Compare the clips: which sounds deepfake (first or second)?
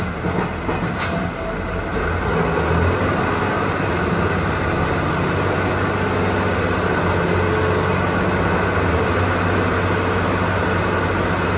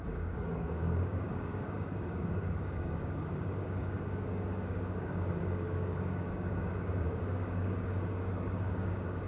second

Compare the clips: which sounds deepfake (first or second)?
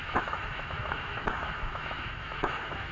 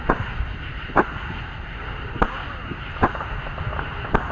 first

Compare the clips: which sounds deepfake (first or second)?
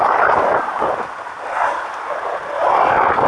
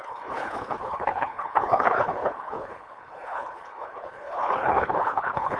second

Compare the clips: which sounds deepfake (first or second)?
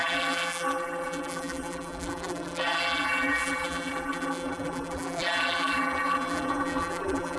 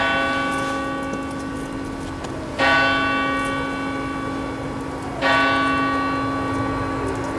first